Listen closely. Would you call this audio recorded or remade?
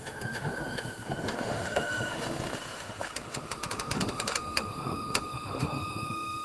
remade